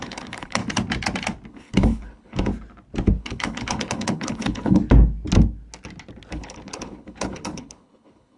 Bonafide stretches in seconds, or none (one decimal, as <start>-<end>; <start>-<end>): 0.6-1.5; 2.5-3.2; 4.8-6.3